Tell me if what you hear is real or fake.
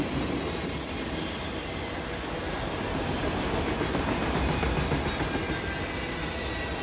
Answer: real